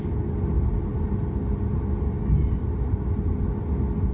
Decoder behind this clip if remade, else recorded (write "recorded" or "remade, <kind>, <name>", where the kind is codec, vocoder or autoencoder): recorded